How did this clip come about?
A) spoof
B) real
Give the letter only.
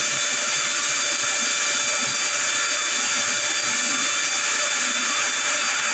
B